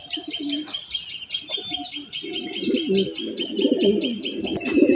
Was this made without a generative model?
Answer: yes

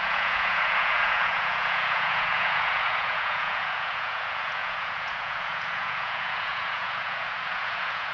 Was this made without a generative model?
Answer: no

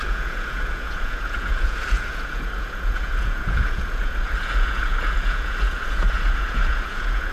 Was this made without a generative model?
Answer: no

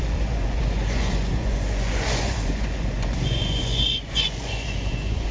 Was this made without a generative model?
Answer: no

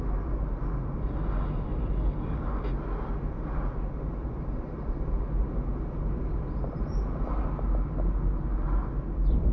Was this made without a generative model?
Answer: yes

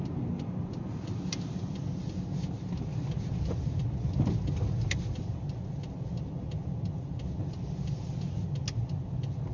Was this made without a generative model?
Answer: yes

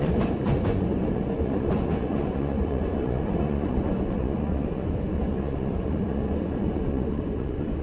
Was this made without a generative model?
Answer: no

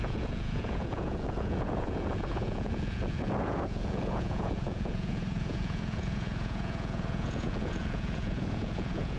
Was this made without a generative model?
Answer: no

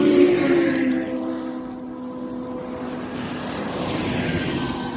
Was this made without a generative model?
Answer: yes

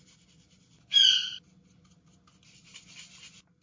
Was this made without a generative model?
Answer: yes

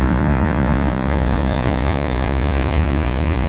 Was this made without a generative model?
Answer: no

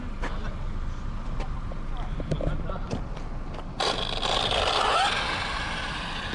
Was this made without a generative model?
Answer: yes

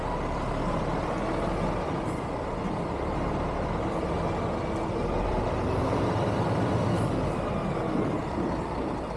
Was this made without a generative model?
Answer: yes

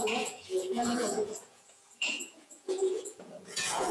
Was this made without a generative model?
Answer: no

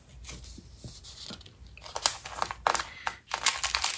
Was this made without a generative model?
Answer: yes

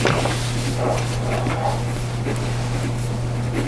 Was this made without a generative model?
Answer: yes